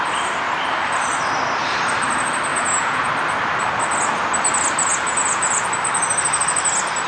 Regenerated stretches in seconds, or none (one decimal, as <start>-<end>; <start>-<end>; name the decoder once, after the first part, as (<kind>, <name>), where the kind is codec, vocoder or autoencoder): 2.5-3.1 (vocoder, Vocos); 4.9-5.7